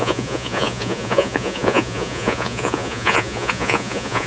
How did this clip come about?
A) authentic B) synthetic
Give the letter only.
B